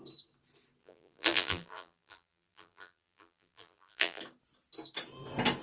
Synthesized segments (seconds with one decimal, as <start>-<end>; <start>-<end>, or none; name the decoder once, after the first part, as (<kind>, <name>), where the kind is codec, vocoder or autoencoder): 0.8-4.2 (vocoder, BigVGAN v2)